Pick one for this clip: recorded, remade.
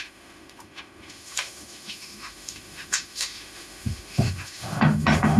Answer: remade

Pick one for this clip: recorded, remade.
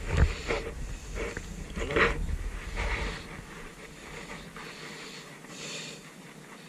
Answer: recorded